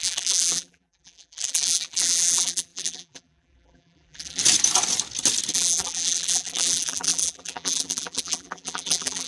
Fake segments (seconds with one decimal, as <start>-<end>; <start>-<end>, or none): 0.0-4.4; 5.5-9.3